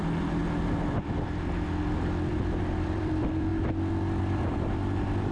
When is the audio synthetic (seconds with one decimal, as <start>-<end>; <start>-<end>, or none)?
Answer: 0.0-0.4; 2.6-3.5; 4.2-5.3